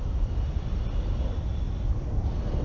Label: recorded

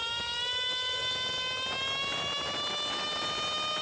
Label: recorded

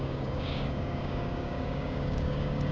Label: remade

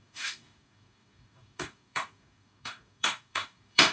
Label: remade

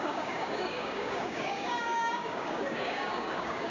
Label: remade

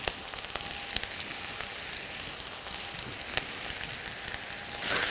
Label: recorded